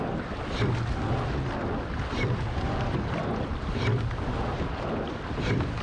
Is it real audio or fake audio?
real